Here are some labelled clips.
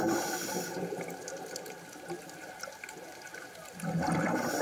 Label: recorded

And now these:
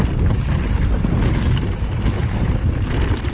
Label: recorded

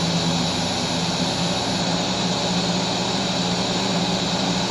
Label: recorded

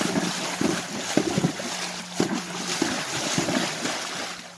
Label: recorded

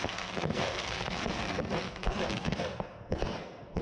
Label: remade